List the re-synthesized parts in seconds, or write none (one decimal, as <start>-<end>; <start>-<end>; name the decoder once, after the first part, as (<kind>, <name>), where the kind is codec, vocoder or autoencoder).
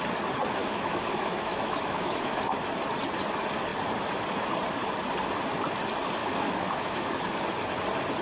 0.6-2.4 (autoencoder, DAC-VAE); 6.2-7.2